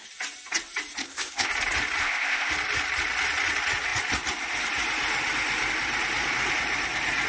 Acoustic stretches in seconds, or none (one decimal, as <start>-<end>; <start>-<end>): 0.0-1.0; 1.5-2.0; 2.5-7.3